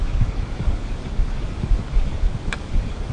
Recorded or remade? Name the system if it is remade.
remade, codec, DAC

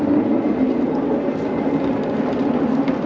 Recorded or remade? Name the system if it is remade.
recorded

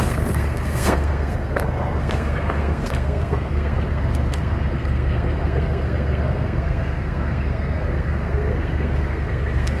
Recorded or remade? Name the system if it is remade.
remade, codec, SNAC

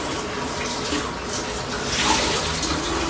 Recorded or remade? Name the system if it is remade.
recorded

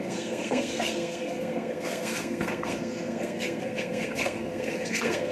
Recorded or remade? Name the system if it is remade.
remade, codec, SNAC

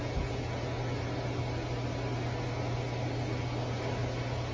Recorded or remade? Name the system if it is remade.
recorded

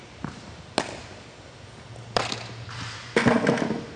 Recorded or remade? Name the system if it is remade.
recorded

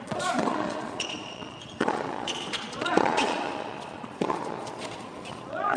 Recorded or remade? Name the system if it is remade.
remade, vocoder, Vocos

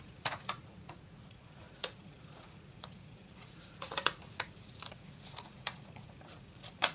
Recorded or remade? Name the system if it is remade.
remade, vocoder, Vocos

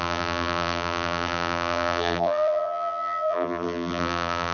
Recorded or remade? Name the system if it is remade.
remade, vocoder, BigVGAN v2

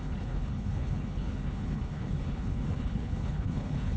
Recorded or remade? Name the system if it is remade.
remade, codec, HILCodec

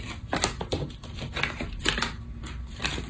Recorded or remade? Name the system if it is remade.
remade, vocoder, BigVGAN v2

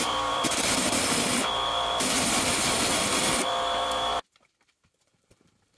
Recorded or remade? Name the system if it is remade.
remade, vocoder, BigVGAN v2